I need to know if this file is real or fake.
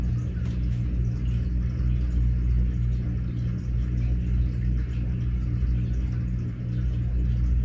real